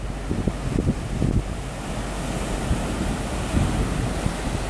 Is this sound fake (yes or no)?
no